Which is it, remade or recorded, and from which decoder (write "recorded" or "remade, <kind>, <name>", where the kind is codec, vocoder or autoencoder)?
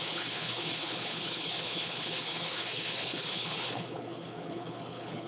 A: remade, codec, HILCodec